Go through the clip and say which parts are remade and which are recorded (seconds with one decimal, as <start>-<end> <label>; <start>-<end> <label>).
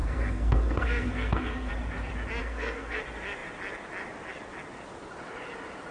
0.0-1.7 remade; 1.7-2.4 recorded; 2.4-3.0 remade; 3.0-5.9 recorded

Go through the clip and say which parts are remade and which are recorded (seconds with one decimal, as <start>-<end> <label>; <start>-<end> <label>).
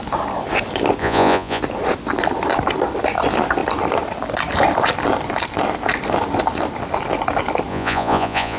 0.0-1.0 recorded; 1.0-1.6 remade; 1.6-7.7 recorded; 7.7-8.6 remade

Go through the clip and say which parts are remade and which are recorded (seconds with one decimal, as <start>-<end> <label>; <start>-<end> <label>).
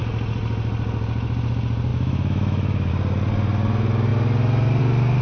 0.0-1.9 recorded; 1.9-2.9 remade; 2.9-5.2 recorded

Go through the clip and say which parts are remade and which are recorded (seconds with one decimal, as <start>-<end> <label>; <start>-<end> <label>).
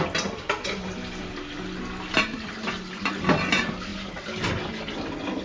0.0-5.4 recorded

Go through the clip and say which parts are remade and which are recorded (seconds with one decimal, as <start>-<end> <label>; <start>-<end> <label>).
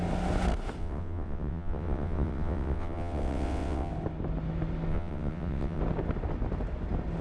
0.0-0.8 recorded; 0.8-3.9 remade; 3.9-4.9 recorded; 4.9-5.8 remade; 5.8-7.2 recorded